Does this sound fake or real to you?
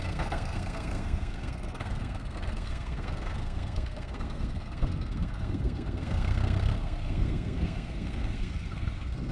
fake